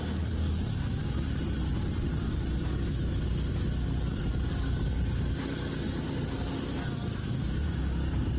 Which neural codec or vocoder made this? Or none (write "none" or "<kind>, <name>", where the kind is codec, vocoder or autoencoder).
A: none